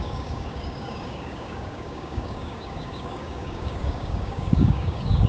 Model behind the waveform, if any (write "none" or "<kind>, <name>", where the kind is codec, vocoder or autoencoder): codec, DAC